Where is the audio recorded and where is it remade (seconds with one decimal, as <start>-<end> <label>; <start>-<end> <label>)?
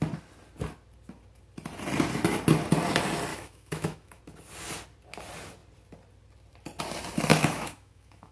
0.0-3.3 recorded; 3.3-4.2 remade; 4.2-7.3 recorded; 7.3-8.3 remade